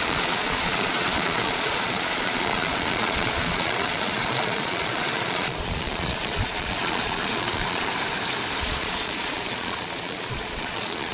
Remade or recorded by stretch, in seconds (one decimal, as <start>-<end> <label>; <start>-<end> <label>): 0.0-7.9 remade; 7.9-8.6 recorded; 8.6-11.1 remade